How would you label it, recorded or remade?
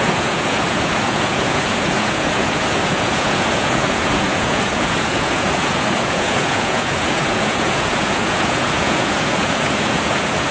remade